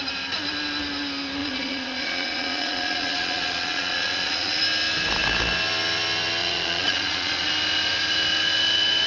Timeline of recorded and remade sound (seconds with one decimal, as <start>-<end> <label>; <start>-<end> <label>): 0.0-1.4 recorded; 1.4-4.6 remade; 4.6-6.4 recorded; 6.4-7.5 remade; 7.5-9.1 recorded